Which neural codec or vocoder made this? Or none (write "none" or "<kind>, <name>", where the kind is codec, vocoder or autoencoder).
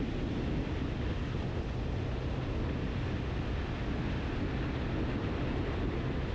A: none